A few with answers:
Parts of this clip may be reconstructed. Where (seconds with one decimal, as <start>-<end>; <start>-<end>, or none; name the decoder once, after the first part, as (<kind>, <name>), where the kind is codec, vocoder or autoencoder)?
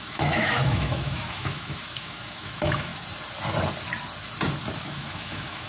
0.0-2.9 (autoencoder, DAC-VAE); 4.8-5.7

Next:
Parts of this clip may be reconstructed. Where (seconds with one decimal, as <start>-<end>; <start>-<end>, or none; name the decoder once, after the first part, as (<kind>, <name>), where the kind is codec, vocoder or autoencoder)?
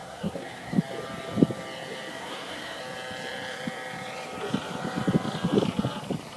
0.0-0.8 (codec, SNAC); 2.1-2.8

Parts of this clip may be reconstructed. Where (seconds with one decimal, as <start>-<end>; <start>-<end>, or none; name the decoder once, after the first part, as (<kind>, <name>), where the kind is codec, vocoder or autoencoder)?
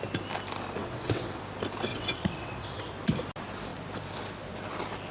0.8-1.4 (vocoder, WaveNeXt); 1.9-2.9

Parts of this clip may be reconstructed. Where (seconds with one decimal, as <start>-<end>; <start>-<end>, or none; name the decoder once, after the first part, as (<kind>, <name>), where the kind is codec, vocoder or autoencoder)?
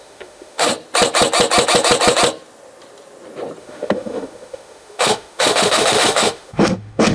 0.0-0.7 (autoencoder, DAC-VAE); 3.6-7.1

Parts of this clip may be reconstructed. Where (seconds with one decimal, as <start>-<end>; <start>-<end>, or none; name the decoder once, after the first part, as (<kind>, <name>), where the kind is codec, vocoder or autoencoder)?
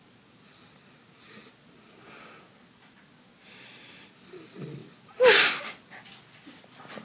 none